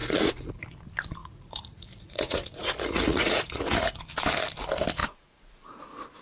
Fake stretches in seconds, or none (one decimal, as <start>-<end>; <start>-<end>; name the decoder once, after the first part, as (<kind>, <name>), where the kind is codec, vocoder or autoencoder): 0.0-0.6 (vocoder, Vocos); 1.2-4.0; 5.0-5.8

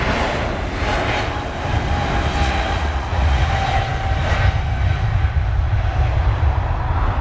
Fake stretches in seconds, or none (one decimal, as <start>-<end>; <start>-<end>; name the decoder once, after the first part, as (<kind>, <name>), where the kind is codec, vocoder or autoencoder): 2.4-3.5 (vocoder, Vocos)

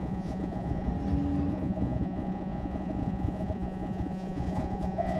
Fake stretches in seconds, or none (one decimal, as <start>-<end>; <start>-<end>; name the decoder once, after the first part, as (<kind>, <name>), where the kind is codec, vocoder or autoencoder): 0.0-0.9 (vocoder, Vocos); 1.5-5.2

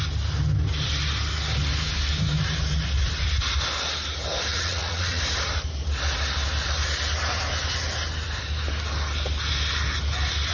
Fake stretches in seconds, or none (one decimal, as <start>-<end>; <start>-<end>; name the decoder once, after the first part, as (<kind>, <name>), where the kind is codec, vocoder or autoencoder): 4.5-5.2 (vocoder, Vocos)

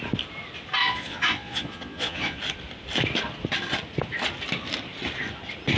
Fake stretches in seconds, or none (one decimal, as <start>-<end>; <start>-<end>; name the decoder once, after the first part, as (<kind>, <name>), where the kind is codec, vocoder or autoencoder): 0.8-2.4 (vocoder, Vocos)

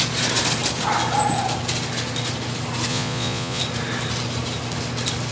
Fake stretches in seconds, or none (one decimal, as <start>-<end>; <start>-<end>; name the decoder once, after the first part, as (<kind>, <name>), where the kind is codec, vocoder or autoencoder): 2.9-3.6 (vocoder, Vocos)

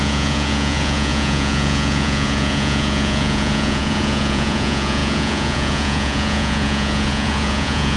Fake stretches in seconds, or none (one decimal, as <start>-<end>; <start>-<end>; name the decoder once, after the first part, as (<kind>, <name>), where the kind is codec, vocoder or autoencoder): 0.0-8.0 (vocoder, Vocos)

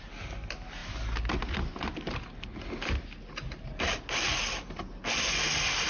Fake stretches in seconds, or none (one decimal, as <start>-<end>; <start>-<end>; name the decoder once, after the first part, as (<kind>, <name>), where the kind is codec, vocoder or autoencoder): none